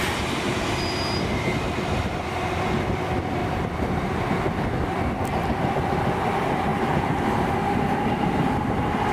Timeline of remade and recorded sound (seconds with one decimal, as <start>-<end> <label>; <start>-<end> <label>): 0.0-3.4 recorded; 3.4-4.5 remade; 4.5-6.7 recorded; 6.7-7.3 remade; 7.3-9.1 recorded